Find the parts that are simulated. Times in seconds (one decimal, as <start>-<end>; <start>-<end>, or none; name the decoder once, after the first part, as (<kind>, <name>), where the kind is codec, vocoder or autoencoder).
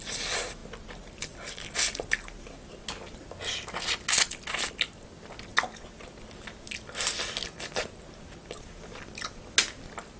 none